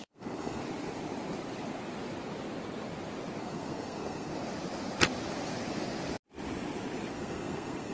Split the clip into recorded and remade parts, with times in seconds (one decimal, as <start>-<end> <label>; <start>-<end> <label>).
0.0-0.6 remade; 0.6-3.4 recorded; 3.4-4.3 remade; 4.3-7.1 recorded; 7.1-7.9 remade